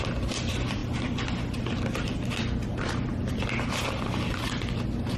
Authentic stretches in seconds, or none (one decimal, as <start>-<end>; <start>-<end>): 0.0-5.2